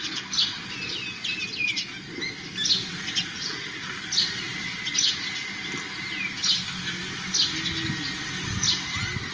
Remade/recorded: recorded